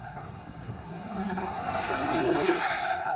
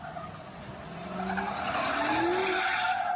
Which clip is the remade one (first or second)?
first